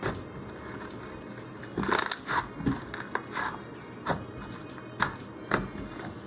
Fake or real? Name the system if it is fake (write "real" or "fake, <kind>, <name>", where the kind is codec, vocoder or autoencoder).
real